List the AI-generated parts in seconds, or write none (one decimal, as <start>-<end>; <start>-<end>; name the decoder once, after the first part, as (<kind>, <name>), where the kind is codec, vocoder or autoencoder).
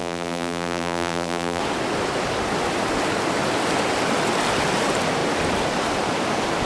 0.0-1.6 (vocoder, BigVGAN v2)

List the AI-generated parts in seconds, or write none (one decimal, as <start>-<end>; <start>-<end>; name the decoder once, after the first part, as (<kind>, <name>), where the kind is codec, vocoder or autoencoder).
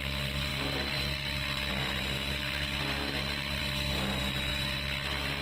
0.0-3.6 (vocoder, BigVGAN v2); 4.5-5.4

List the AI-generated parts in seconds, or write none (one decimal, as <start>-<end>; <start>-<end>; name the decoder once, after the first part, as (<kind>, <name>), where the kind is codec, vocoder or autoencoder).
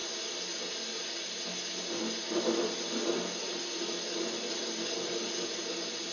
none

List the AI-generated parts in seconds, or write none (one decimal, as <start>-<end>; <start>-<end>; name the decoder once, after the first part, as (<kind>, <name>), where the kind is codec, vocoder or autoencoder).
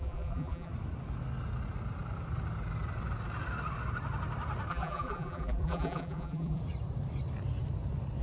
0.0-0.7 (vocoder, BigVGAN v2); 4.7-6.6